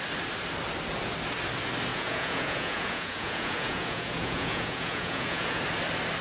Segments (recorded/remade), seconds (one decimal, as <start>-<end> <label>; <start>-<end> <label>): 0.0-1.9 recorded; 1.9-5.6 remade; 5.6-6.2 recorded